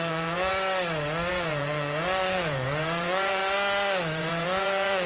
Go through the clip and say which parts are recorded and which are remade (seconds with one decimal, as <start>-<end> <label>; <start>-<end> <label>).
0.0-0.5 remade; 0.5-1.3 recorded; 1.3-3.4 remade; 3.4-4.2 recorded; 4.2-5.1 remade